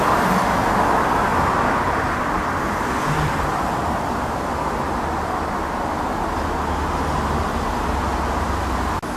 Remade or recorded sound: recorded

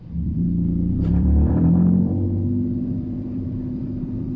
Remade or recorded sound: remade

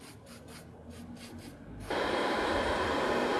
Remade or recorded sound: remade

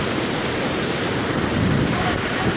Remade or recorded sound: remade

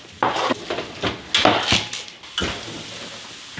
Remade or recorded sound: recorded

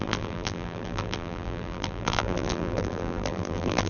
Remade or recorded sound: remade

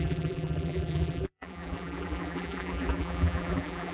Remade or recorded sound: remade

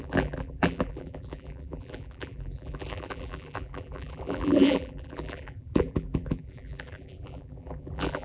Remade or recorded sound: remade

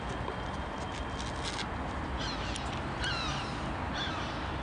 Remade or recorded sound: recorded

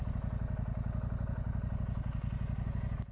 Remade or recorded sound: recorded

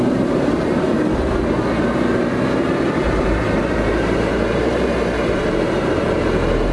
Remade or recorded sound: remade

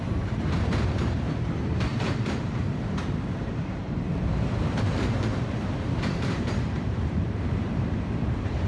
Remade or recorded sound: remade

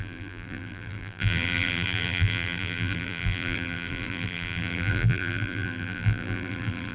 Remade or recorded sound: remade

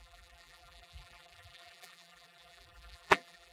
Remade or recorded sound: remade